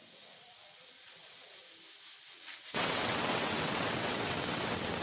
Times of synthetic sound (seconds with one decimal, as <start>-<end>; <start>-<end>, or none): 0.0-1.6; 2.3-5.0